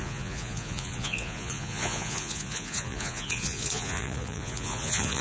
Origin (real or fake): fake